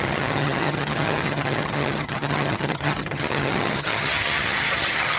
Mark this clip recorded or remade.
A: remade